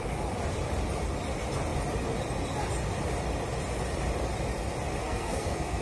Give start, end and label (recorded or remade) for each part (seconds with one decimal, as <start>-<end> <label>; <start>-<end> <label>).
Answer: 0.0-5.0 recorded; 5.0-5.8 remade